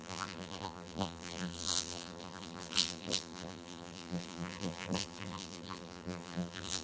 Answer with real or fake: fake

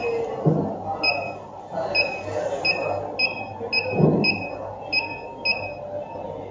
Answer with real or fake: real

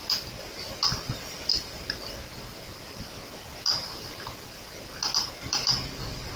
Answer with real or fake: real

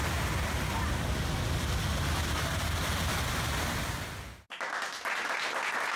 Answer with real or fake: real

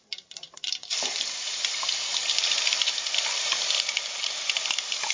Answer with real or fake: fake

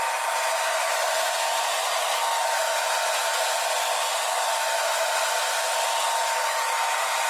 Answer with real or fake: real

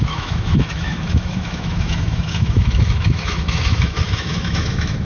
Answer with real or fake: fake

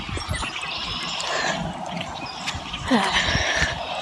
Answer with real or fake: real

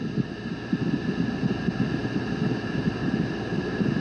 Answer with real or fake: real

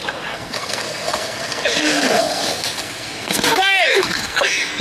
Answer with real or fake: fake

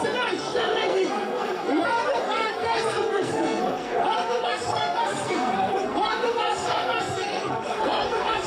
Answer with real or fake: fake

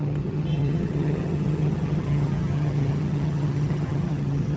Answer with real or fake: fake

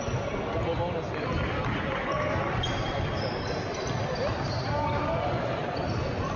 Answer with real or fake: real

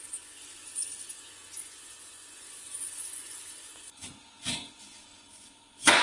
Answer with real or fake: fake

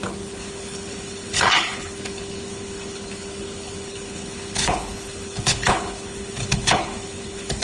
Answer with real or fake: fake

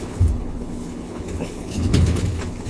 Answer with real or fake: fake